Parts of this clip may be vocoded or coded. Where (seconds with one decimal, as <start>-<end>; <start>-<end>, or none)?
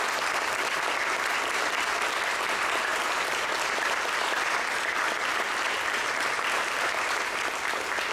2.9-3.5